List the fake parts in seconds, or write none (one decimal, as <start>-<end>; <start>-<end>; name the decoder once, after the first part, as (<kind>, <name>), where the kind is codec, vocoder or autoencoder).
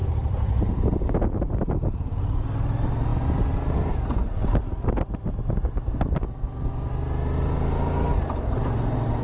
0.0-0.7 (vocoder, BigVGAN v2)